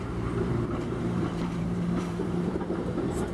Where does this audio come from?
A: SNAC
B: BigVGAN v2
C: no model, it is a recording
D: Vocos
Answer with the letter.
B